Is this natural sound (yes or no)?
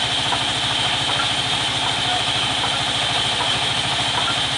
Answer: yes